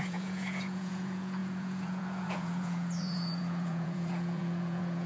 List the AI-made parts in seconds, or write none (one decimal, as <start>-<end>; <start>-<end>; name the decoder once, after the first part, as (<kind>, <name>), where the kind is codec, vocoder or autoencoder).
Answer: 0.0-5.1 (vocoder, Vocos)